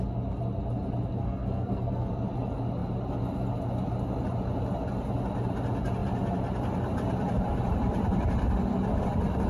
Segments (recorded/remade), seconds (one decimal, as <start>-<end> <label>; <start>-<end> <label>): 0.0-1.2 recorded; 1.2-2.1 remade; 2.1-9.5 recorded